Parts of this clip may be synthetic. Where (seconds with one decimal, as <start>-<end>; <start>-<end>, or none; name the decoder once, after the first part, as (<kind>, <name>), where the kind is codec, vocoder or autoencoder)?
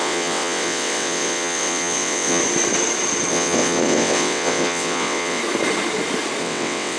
0.0-2.4 (vocoder, WaveNeXt); 3.3-5.4; 6.4-7.0